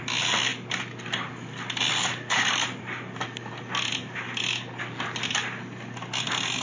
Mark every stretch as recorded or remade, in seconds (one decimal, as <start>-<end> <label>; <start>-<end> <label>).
0.0-6.6 recorded

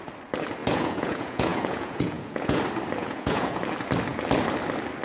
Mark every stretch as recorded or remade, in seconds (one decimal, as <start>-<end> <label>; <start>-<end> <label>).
0.0-0.6 recorded; 0.6-2.6 remade; 2.6-3.0 recorded; 3.0-3.6 remade; 3.6-5.0 recorded